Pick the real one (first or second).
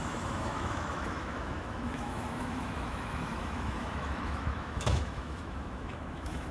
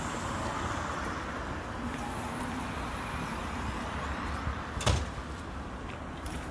second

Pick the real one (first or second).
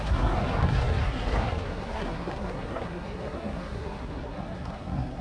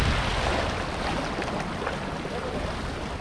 second